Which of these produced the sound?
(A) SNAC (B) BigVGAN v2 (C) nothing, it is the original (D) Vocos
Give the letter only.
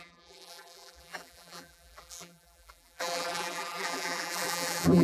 B